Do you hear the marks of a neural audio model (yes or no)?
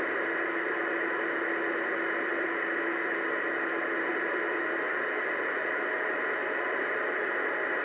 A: no